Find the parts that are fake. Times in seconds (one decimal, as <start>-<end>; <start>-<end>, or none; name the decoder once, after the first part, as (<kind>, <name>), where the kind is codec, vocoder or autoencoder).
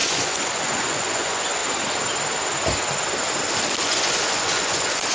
0.0-1.6 (vocoder, Vocos); 3.9-5.1